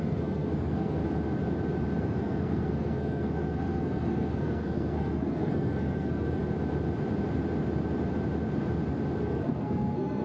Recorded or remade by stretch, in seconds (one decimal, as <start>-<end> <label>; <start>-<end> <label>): 0.0-1.0 remade; 1.0-2.0 recorded; 2.0-6.4 remade; 6.4-9.3 recorded; 9.3-10.2 remade